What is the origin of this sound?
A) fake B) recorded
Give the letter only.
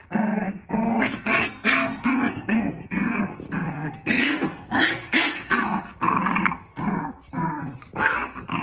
A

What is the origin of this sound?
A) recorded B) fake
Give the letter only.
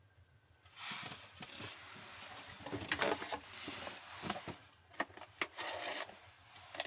A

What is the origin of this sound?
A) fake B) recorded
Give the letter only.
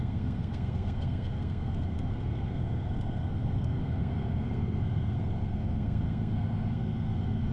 A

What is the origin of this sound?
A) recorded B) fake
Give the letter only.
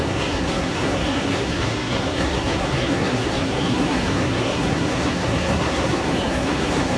B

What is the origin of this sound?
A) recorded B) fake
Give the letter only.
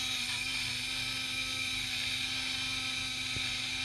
A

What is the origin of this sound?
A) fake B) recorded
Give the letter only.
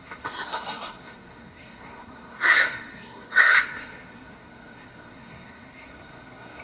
A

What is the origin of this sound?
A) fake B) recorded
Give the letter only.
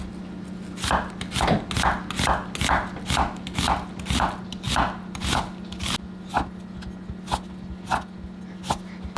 B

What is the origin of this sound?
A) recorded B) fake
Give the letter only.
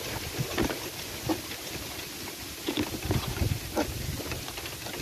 A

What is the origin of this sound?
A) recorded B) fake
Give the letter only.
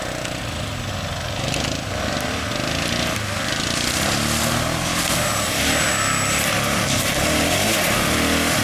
A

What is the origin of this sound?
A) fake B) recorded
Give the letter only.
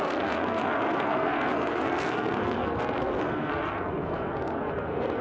A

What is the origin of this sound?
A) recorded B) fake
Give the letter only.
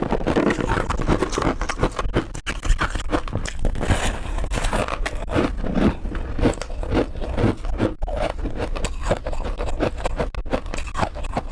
A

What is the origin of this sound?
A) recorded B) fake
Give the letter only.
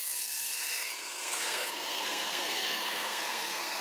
B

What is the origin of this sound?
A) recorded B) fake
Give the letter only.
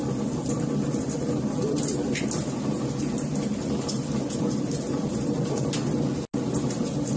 A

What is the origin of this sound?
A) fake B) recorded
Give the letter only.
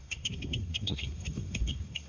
A